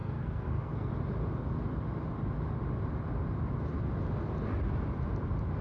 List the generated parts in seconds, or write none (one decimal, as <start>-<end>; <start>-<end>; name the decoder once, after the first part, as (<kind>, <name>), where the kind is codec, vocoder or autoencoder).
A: 0.0-0.9 (codec, SNAC)